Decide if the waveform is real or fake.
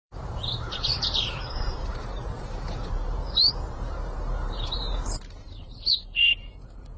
fake